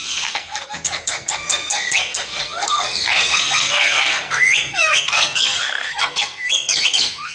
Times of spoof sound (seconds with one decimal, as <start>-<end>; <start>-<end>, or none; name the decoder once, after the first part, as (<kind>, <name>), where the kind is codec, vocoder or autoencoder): 0.0-7.3 (codec, SNAC)